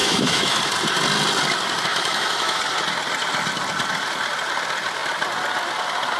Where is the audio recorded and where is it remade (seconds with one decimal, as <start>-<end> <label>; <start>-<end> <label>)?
0.0-0.6 remade; 0.6-1.9 recorded; 1.9-2.6 remade; 2.6-6.2 recorded